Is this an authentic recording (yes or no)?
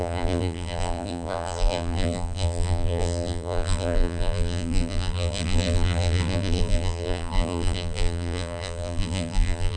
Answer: no